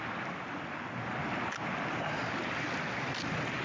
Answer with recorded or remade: recorded